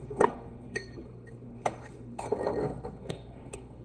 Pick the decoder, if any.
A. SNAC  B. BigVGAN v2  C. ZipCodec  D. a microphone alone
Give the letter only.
A